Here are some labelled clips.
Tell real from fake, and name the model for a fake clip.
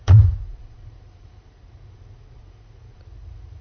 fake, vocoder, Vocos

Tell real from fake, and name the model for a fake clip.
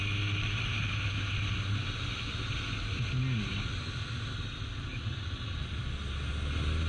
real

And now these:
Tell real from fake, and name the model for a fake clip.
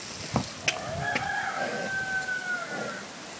real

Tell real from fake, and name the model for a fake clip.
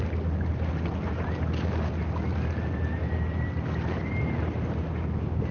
real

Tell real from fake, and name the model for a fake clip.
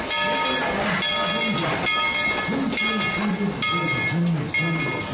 real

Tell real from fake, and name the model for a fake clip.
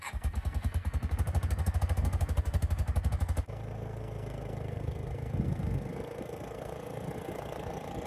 fake, codec, SNAC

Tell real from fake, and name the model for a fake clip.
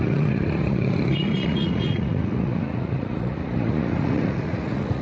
fake, vocoder, Vocos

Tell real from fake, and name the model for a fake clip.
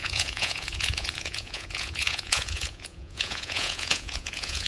fake, vocoder, Vocos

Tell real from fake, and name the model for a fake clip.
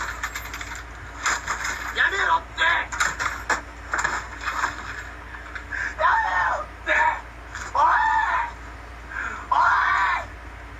real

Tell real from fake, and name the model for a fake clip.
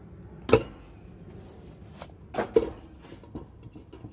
real